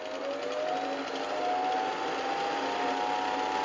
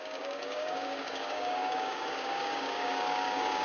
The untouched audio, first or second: first